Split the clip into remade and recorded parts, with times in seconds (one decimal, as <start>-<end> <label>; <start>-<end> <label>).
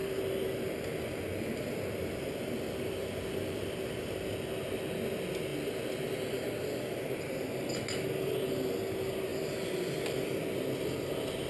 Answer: 0.0-4.1 remade; 4.1-9.3 recorded; 9.3-10.6 remade; 10.6-11.5 recorded